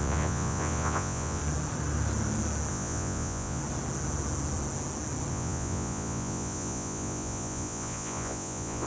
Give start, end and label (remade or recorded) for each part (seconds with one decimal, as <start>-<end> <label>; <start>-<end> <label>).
0.0-1.4 remade; 1.4-2.7 recorded; 2.7-3.6 remade; 3.6-5.3 recorded; 5.3-8.9 remade